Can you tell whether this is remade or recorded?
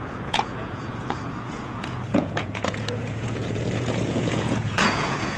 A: remade